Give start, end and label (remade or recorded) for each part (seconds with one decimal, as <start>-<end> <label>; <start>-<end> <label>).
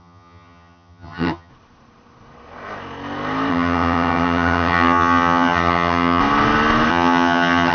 0.0-1.5 remade; 1.5-3.5 recorded; 3.5-6.2 remade; 6.2-6.9 recorded; 6.9-7.7 remade